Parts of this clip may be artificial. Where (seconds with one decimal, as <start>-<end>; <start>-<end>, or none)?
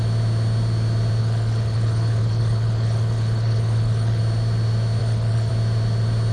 1.2-4.2; 5.0-5.5